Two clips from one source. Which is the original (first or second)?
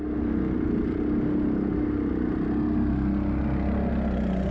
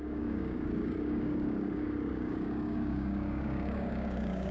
first